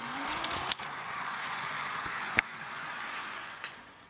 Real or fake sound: fake